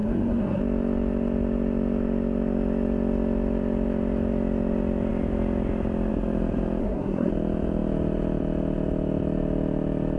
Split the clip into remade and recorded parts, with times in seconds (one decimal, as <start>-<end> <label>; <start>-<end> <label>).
0.0-0.6 remade; 0.6-6.8 recorded; 6.8-7.3 remade; 7.3-10.2 recorded